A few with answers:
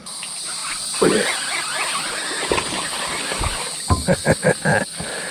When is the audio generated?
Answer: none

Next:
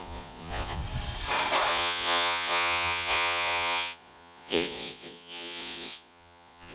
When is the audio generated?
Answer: 0.0-0.8 (vocoder, Vocos); 1.7-6.7

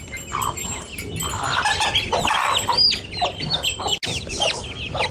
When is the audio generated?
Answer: none